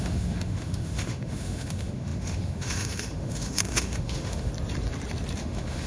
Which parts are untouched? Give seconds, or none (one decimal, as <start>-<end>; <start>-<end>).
4.5-5.4